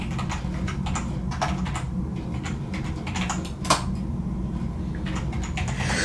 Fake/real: real